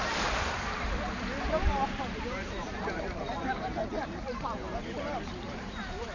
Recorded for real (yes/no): no